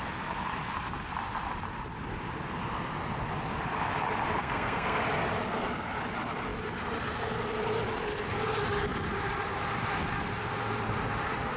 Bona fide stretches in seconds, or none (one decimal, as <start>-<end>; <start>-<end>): 0.0-4.4; 5.0-11.6